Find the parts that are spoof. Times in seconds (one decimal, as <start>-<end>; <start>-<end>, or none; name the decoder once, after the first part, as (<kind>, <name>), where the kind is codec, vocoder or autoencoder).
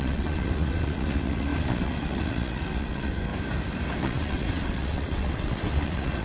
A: 0.0-3.3 (vocoder, WaveNeXt); 4.0-6.2